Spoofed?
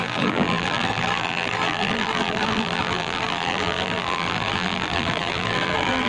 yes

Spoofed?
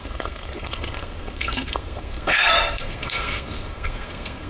yes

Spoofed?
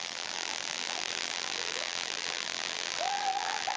yes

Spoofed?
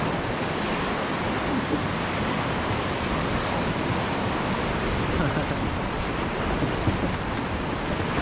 no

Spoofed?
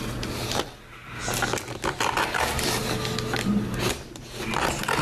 no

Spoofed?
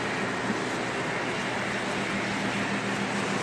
no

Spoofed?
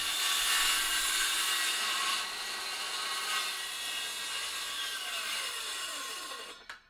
no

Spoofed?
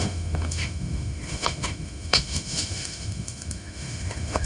yes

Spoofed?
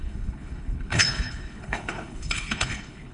yes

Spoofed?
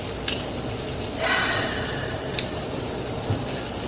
no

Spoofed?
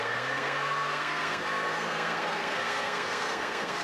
yes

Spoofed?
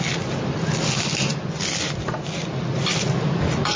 no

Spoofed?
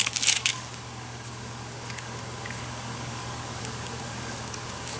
yes